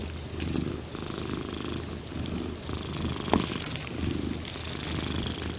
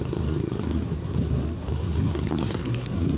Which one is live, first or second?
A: first